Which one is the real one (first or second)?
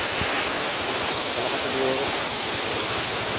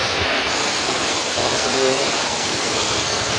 first